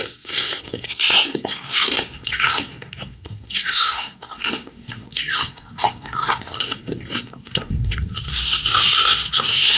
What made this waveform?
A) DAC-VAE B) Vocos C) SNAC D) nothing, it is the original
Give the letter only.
C